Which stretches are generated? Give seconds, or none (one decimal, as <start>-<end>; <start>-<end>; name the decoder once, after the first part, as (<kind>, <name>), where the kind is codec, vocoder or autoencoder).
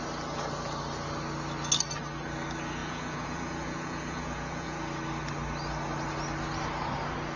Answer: 2.8-4.8 (vocoder, Vocos)